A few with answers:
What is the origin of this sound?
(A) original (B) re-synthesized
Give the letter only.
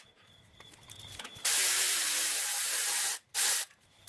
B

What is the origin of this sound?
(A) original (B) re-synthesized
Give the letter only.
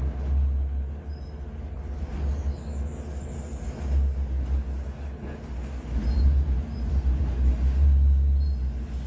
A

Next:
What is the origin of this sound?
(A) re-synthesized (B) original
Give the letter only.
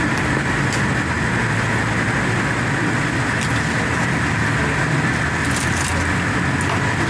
B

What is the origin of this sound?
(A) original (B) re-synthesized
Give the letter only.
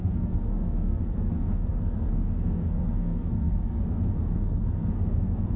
B